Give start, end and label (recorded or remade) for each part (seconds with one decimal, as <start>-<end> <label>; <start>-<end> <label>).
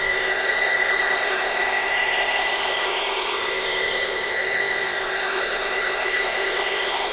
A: 0.0-7.1 remade